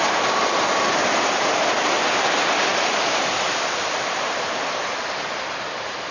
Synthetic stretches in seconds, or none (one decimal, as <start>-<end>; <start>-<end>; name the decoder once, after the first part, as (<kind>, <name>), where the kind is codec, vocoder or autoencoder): none